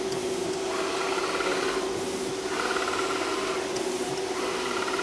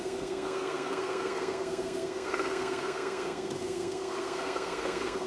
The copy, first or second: second